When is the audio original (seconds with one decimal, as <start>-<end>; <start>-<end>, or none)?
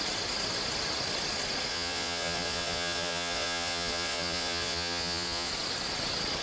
0.0-1.7; 5.5-6.4